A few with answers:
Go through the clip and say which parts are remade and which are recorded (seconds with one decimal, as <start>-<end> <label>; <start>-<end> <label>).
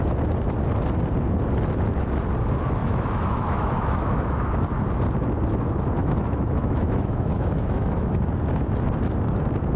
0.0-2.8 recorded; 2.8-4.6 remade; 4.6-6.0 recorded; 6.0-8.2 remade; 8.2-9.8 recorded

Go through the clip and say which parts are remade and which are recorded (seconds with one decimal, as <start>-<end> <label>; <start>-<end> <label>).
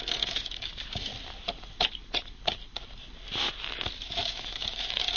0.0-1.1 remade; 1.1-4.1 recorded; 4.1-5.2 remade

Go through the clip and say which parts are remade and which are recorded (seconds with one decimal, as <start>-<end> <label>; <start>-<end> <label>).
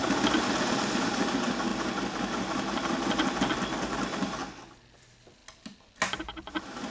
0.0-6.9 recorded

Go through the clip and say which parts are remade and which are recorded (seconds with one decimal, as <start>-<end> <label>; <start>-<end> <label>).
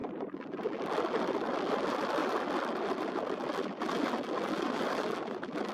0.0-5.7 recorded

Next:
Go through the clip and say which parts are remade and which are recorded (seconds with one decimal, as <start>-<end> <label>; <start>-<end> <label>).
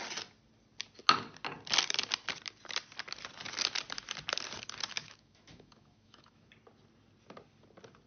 0.0-4.9 recorded; 4.9-6.5 remade; 6.5-8.1 recorded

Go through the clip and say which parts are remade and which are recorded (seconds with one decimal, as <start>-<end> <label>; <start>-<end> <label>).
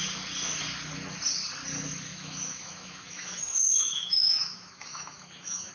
0.0-2.1 recorded; 2.1-5.7 remade